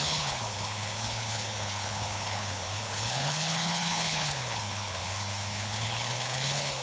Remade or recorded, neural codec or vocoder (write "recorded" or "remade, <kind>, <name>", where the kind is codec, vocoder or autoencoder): remade, codec, HILCodec